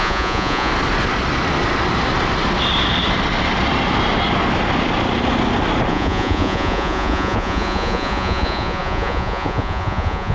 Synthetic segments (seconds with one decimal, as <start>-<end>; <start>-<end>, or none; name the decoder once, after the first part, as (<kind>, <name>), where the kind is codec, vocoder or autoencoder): 0.0-0.7 (vocoder, Vocos); 5.9-10.3